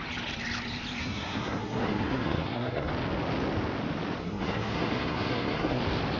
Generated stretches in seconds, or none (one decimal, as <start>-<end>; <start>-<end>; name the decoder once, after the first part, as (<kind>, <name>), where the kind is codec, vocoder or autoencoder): 1.0-2.9 (codec, SNAC); 4.2-5.8